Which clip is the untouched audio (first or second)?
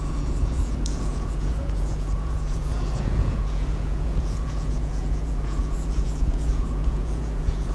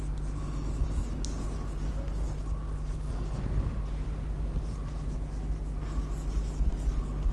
second